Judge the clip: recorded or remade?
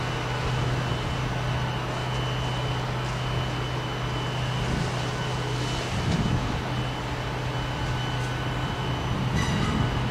recorded